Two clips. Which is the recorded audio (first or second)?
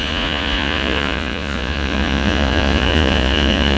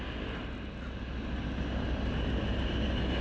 second